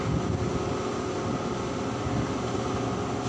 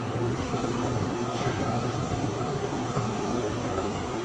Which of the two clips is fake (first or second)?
second